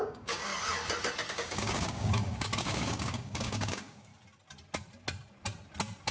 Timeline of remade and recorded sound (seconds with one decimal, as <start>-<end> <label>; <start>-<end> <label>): 0.0-0.5 remade; 0.5-1.3 recorded; 1.3-4.1 remade; 4.1-6.1 recorded